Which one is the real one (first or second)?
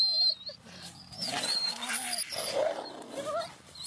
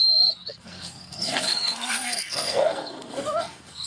first